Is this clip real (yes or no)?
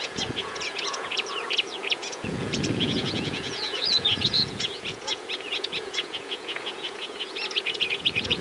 no